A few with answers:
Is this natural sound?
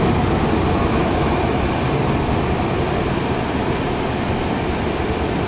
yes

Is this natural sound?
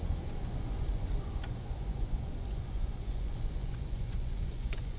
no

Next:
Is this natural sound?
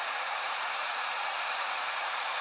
no